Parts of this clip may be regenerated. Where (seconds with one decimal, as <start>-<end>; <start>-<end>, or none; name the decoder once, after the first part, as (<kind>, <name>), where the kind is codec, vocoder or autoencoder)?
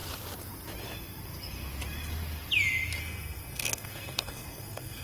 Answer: 3.0-5.0 (codec, SNAC)